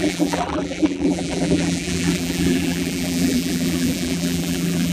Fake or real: fake